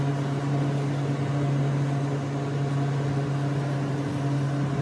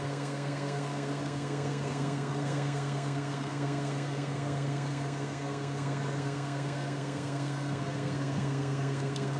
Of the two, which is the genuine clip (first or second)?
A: first